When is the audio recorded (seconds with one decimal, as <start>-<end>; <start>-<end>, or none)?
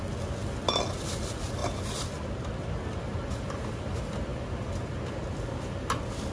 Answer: none